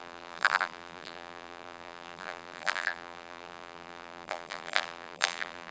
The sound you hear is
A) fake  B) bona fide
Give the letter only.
A